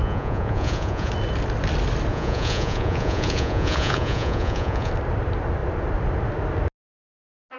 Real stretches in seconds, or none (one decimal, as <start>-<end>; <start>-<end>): 1.1-2.1; 4.9-7.6